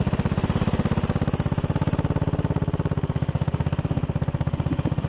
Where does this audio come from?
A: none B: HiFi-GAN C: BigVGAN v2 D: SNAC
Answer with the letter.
A